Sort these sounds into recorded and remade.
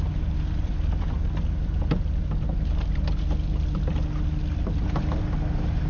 recorded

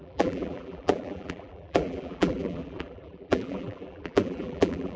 remade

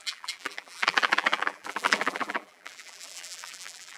remade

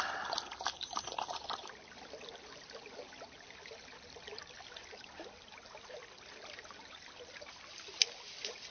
recorded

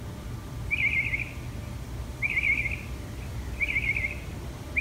remade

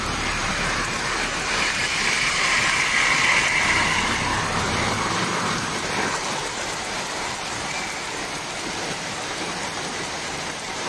remade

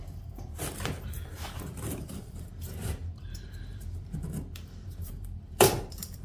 remade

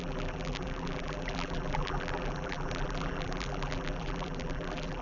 remade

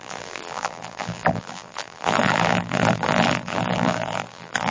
remade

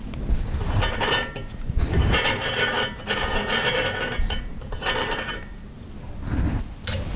remade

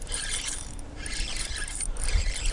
remade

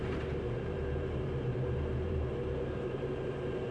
remade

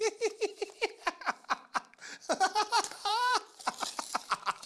remade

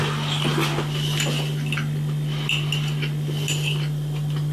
recorded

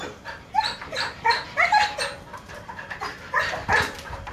remade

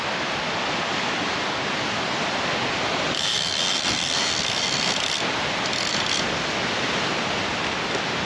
remade